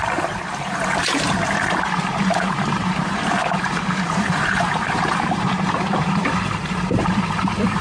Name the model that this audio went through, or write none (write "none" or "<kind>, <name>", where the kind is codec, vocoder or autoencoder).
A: vocoder, BigVGAN v2